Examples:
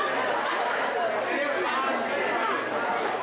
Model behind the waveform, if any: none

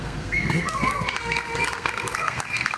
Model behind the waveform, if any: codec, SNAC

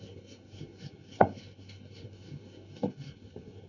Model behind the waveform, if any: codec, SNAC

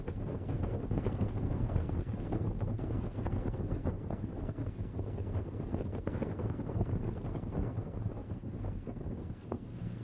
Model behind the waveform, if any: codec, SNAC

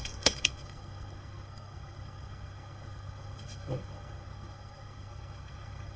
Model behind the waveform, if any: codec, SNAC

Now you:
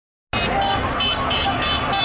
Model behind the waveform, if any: none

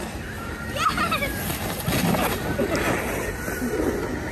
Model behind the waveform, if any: none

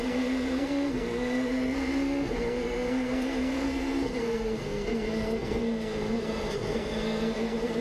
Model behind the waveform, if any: codec, SNAC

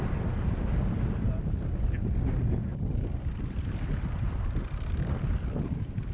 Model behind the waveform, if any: none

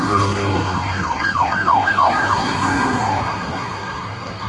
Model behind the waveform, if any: codec, SNAC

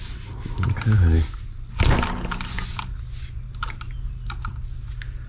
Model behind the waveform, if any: none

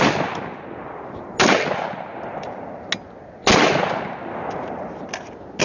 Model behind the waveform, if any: none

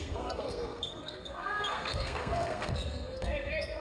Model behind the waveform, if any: codec, SNAC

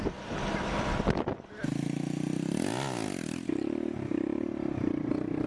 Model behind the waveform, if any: none